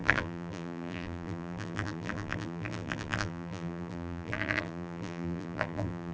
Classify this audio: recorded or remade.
remade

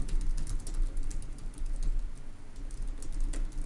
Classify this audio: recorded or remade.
recorded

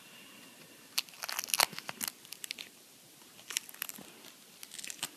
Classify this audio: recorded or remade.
recorded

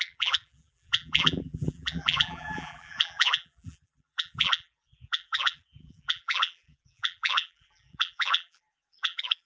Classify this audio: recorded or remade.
remade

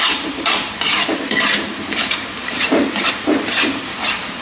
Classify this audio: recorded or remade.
remade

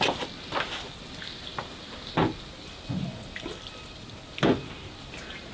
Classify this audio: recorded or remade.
recorded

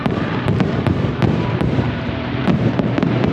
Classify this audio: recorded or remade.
remade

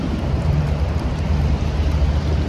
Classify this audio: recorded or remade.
remade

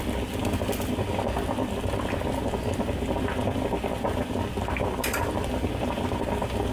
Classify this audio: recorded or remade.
recorded